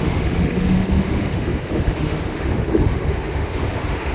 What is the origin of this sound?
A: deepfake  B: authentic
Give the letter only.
A